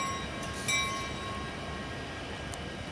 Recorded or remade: recorded